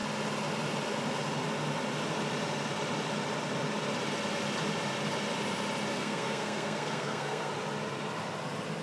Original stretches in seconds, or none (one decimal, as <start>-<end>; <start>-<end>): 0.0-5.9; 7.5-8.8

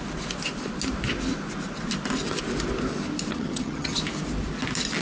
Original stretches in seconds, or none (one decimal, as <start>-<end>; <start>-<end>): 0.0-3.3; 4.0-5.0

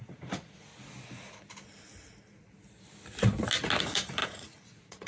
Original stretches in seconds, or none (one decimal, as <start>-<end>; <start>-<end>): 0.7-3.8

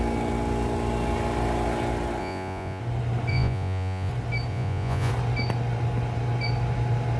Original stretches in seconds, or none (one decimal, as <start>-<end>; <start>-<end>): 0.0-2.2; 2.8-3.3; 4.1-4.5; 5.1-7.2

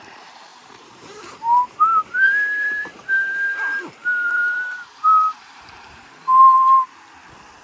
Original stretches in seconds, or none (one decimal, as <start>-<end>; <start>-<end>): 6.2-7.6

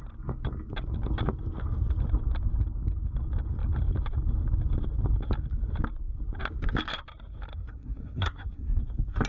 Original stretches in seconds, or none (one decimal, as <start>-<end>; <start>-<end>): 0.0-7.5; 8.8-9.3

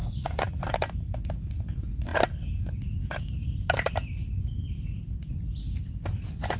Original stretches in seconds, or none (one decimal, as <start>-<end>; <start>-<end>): 0.6-6.6

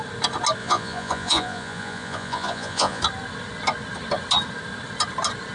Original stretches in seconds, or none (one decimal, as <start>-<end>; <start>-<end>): 0.0-0.6; 3.0-5.5